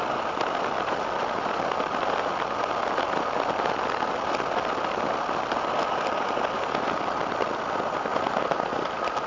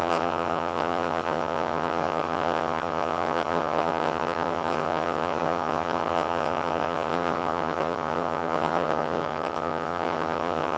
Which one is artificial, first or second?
second